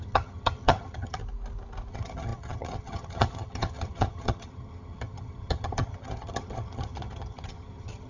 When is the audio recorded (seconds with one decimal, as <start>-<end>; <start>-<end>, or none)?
1.2-1.9